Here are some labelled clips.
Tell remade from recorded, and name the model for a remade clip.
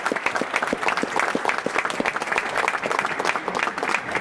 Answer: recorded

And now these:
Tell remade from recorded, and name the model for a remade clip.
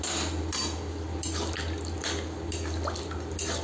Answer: recorded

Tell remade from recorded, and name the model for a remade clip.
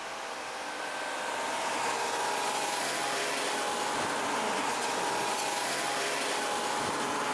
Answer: recorded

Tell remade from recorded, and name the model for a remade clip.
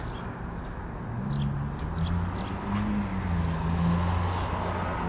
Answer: recorded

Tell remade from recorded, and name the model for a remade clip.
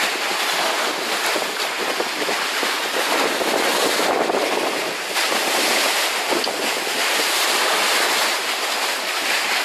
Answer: recorded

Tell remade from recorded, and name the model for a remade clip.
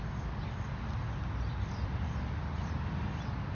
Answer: recorded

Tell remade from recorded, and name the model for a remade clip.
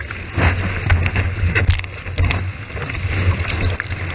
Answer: recorded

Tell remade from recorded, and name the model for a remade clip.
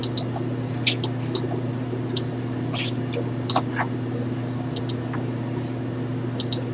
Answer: recorded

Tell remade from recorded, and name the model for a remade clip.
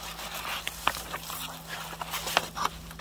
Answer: recorded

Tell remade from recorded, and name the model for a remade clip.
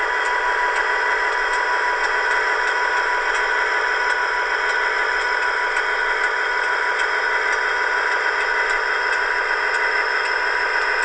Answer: recorded